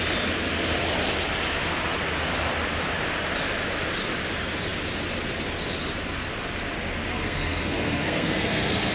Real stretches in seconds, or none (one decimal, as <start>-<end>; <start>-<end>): 0.0-7.1